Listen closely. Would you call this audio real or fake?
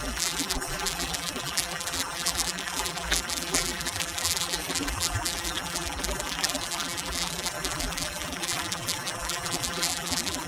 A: fake